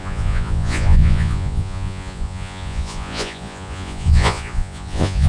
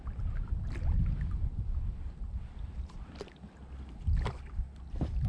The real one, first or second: second